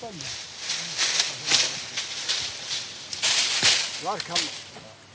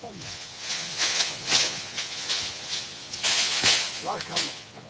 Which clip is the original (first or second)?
first